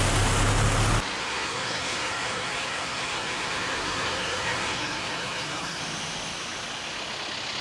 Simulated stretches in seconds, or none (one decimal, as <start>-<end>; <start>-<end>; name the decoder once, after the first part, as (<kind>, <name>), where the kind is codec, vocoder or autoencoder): 1.2-5.8 (codec, SNAC)